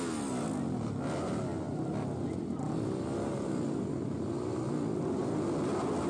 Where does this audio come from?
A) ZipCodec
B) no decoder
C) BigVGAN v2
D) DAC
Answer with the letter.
B